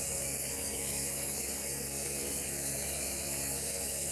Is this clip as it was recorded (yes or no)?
no